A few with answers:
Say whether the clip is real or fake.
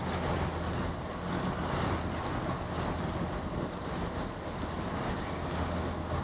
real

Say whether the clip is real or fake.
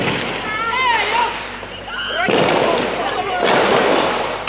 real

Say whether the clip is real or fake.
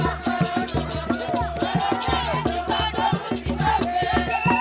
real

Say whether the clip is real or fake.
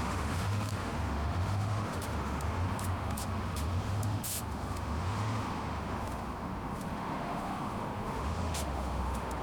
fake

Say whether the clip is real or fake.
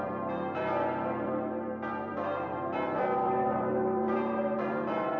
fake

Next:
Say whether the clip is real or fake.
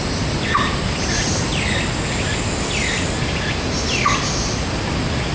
real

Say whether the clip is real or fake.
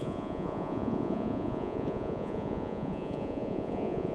fake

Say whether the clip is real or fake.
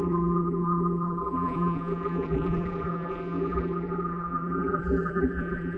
fake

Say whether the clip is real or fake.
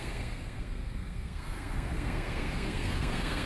fake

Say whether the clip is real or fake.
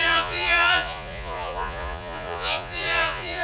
fake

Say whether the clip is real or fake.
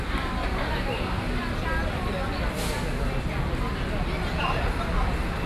real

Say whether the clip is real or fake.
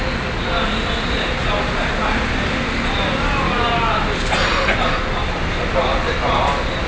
real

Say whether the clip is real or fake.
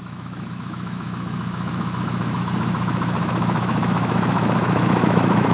fake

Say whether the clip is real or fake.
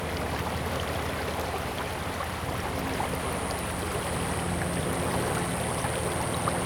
real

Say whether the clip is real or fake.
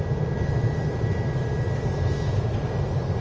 fake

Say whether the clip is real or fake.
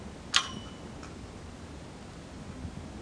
real